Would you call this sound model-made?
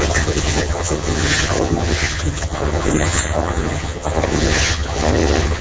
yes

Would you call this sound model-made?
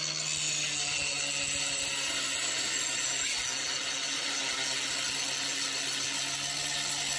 no